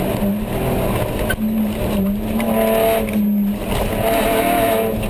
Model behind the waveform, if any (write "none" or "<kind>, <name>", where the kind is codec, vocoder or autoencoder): none